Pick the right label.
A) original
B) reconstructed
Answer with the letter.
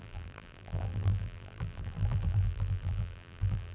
B